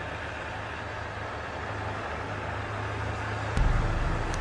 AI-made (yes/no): no